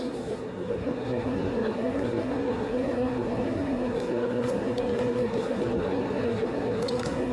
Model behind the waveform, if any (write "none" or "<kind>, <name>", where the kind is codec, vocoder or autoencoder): codec, SNAC